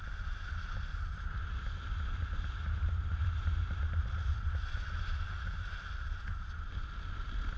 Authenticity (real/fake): real